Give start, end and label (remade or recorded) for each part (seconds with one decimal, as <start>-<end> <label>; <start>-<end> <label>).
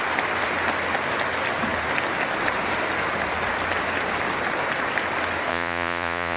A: 0.0-5.5 recorded; 5.5-6.4 remade